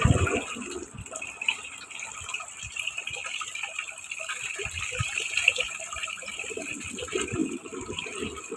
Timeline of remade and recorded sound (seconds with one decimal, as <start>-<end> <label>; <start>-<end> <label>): 0.0-8.6 recorded